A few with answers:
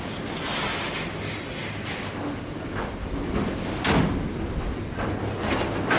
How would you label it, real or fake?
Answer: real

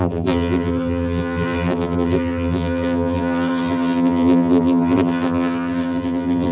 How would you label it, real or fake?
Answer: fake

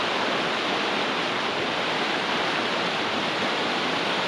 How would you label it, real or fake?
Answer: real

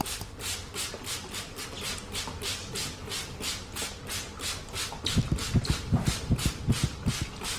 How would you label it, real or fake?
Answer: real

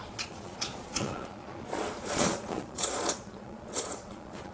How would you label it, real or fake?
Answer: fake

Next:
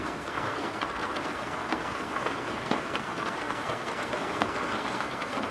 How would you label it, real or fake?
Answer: fake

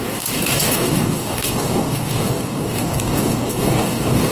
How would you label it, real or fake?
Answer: fake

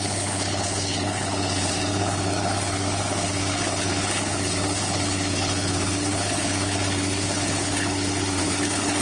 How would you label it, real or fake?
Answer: fake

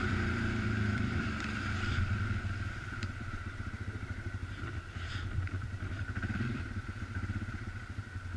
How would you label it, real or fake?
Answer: fake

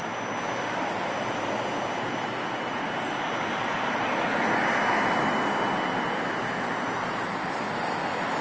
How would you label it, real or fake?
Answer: real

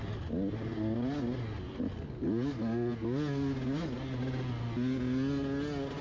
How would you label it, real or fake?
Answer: real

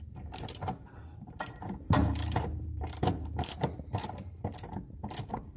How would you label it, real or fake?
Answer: fake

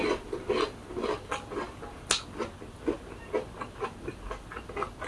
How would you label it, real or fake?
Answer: real